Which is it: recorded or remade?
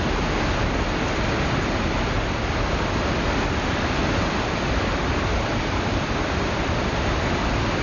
recorded